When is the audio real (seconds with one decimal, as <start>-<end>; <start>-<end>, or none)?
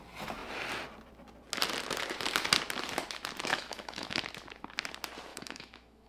0.0-3.5; 4.2-5.3